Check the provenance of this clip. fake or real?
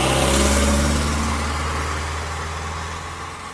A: real